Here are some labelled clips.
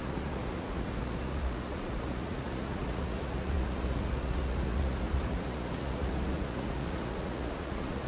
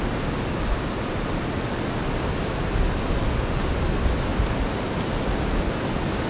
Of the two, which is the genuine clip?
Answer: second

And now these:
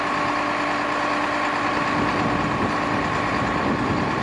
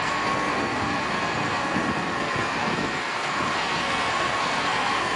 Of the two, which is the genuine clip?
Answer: first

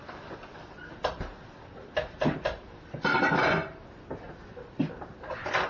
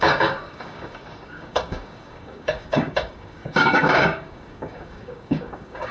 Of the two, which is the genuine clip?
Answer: first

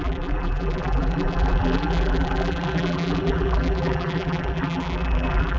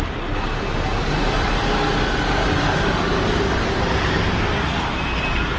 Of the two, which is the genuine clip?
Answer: second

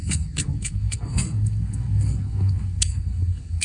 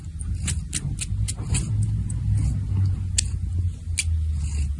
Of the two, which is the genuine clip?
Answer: second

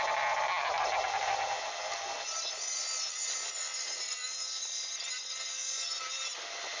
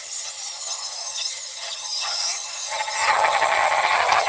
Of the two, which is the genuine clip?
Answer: first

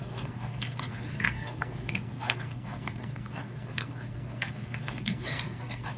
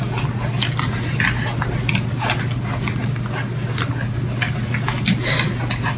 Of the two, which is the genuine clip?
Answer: second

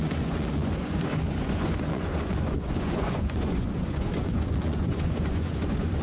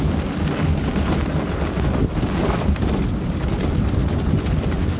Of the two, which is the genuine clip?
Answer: second